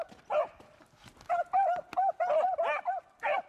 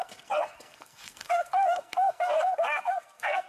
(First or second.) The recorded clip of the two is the first